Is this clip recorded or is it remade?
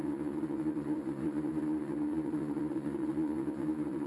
remade